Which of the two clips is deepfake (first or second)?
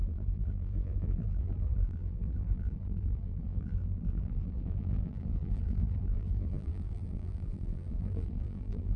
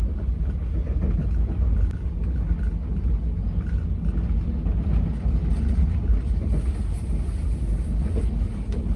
first